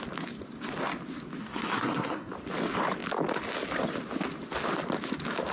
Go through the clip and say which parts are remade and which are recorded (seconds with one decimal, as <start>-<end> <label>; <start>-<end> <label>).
0.0-1.4 recorded; 1.4-2.3 remade; 2.3-5.5 recorded